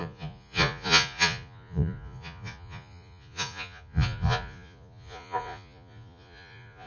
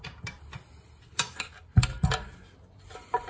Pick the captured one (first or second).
second